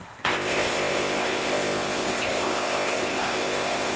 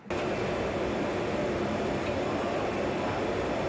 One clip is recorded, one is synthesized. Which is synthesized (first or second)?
first